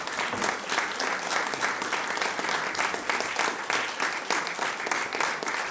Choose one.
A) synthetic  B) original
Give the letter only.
B